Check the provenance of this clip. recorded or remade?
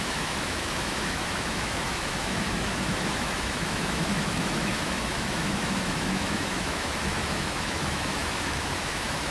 remade